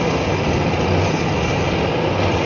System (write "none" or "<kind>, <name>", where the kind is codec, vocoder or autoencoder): none